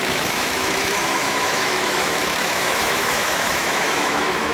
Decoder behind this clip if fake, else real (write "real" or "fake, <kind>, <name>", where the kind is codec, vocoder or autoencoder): fake, autoencoder, DAC-VAE